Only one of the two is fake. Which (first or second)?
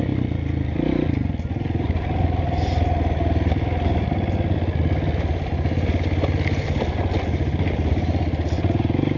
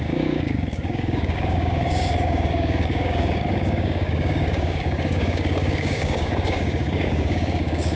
second